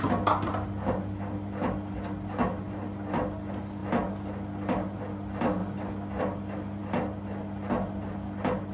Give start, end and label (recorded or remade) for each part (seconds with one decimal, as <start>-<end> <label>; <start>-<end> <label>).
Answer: 0.0-8.7 recorded